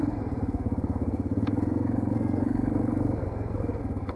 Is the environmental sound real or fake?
fake